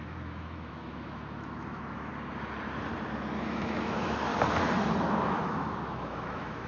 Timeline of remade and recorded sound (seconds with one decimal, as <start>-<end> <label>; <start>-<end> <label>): 0.0-2.1 remade; 2.1-3.4 recorded; 3.4-4.3 remade; 4.3-5.2 recorded; 5.2-6.7 remade